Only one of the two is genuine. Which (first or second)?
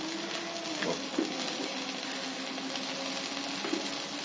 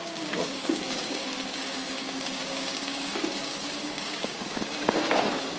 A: first